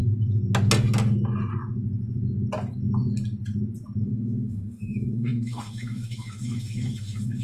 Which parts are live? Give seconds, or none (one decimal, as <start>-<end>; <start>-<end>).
0.0-4.0